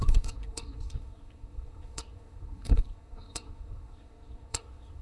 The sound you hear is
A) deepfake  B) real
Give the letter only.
A